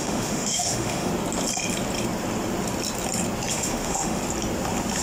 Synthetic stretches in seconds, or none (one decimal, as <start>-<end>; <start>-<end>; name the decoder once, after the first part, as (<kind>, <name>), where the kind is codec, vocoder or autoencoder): 0.0-1.1 (autoencoder, DAC-VAE); 3.5-4.2